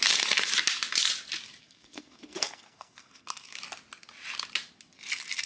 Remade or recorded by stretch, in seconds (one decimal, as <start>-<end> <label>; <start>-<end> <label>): 0.0-1.6 recorded; 1.6-3.6 remade; 3.6-5.5 recorded